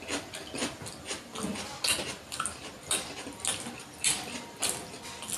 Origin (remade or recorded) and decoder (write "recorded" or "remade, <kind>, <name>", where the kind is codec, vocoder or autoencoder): recorded